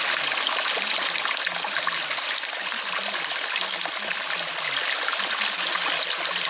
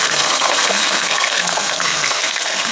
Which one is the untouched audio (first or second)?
first